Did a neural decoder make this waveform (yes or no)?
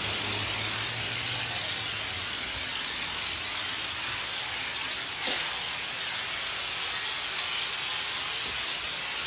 no